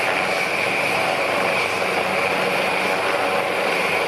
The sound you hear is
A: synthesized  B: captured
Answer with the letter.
B